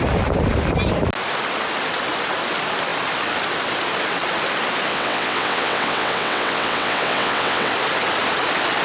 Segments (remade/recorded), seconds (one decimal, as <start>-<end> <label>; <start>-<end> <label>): 0.0-4.9 recorded; 4.9-7.7 remade; 7.7-8.8 recorded